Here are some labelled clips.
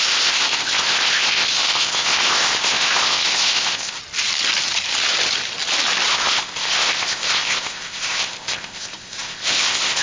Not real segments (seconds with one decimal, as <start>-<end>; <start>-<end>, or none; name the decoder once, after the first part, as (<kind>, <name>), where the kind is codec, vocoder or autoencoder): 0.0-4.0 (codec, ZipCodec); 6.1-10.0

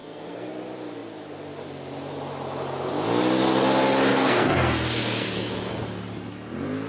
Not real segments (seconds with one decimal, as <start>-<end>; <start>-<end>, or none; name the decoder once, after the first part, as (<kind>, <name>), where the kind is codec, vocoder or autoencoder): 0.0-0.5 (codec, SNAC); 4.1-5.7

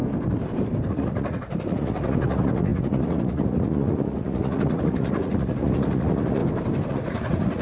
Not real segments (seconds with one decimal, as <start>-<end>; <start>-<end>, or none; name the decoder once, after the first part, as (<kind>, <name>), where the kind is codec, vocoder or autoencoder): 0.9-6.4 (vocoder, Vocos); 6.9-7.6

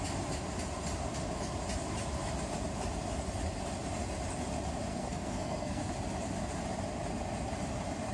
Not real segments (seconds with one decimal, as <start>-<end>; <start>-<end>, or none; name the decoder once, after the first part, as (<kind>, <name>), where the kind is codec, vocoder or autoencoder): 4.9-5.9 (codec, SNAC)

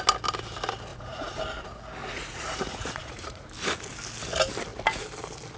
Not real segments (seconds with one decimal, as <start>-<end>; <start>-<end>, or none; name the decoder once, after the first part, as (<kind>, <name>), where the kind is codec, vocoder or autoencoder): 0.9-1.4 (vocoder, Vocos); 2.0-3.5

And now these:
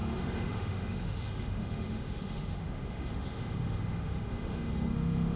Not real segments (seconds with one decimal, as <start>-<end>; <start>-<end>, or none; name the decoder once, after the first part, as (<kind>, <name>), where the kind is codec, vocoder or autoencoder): 0.0-5.4 (autoencoder, DAC-VAE)

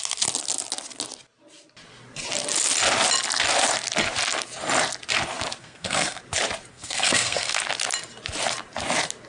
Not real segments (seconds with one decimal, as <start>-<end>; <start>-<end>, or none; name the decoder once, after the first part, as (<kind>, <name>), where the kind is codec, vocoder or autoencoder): 5.6-6.2 (codec, SNAC); 6.7-7.6